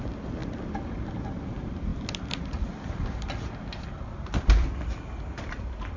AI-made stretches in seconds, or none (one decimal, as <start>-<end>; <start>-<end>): none